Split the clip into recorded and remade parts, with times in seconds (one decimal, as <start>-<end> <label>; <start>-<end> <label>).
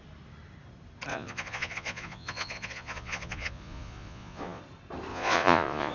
0.0-1.1 recorded; 1.1-4.6 remade; 4.6-5.1 recorded; 5.1-5.9 remade